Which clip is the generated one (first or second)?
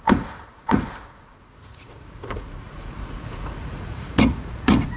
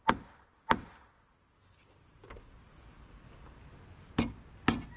first